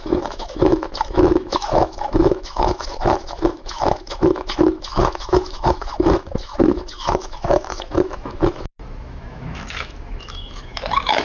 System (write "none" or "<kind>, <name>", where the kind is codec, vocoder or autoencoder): autoencoder, DAC-VAE